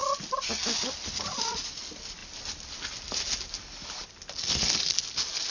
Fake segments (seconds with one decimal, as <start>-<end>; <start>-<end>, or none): none